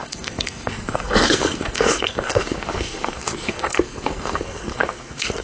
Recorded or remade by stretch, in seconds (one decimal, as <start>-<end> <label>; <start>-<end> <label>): 0.0-5.4 remade